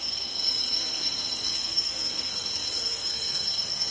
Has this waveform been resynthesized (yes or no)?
yes